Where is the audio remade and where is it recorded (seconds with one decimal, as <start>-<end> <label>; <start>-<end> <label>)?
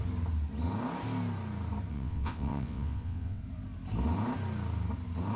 0.0-1.9 recorded; 1.9-3.4 remade; 3.4-5.4 recorded